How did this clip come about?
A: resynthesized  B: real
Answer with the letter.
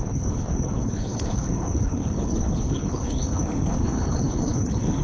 A